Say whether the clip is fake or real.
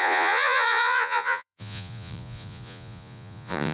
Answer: fake